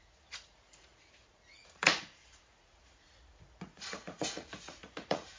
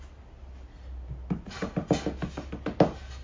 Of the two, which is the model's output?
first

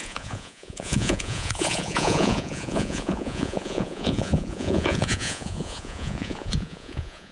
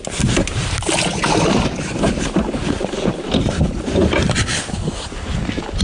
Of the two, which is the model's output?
first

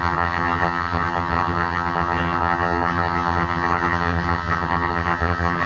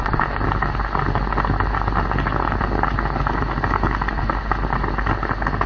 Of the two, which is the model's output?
first